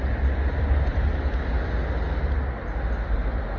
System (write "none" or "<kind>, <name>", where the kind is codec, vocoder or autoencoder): none